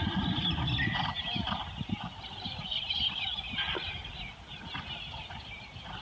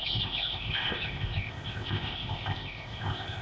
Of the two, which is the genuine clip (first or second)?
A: first